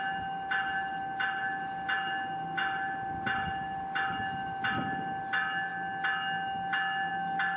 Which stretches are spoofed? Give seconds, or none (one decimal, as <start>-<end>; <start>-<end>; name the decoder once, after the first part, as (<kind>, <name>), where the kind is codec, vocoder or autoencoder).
none